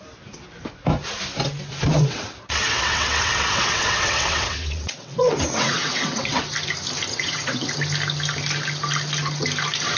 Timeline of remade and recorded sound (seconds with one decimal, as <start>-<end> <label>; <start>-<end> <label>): 0.0-1.9 recorded; 1.9-6.4 remade; 6.4-7.1 recorded; 7.1-7.7 remade; 7.7-10.0 recorded